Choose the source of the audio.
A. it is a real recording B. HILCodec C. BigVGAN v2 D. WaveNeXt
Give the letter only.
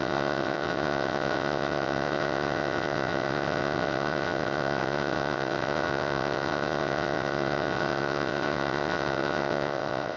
D